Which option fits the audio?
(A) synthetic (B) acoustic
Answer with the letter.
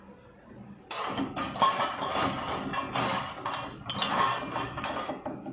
B